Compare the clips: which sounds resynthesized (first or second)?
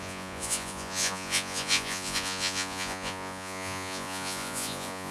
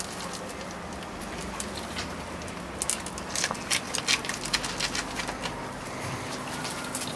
first